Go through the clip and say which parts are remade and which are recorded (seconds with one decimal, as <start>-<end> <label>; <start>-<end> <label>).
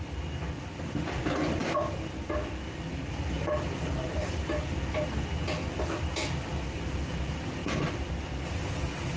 0.0-9.2 recorded